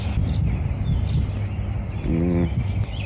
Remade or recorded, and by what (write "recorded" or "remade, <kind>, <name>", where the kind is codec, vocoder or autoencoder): recorded